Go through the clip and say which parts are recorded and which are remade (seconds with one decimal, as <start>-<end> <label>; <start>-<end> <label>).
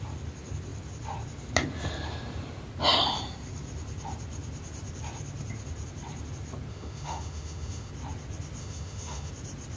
0.0-6.7 recorded; 6.7-7.9 remade; 7.9-8.6 recorded; 8.6-9.3 remade; 9.3-9.8 recorded